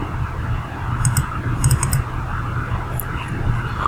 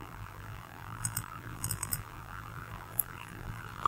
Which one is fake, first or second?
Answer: second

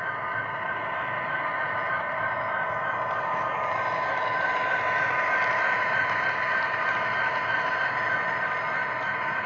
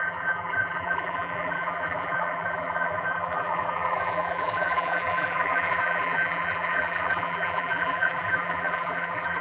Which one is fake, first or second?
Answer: second